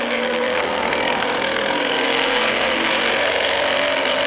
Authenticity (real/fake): fake